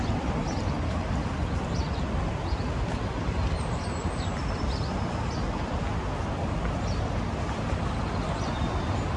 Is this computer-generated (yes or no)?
no